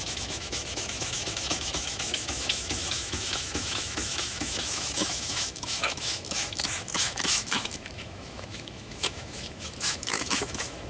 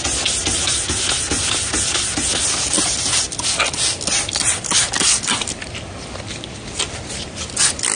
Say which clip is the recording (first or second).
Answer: second